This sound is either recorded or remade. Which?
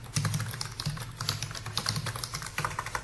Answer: recorded